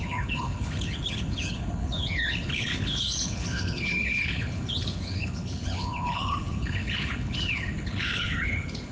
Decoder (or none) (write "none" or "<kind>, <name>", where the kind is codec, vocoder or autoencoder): codec, HILCodec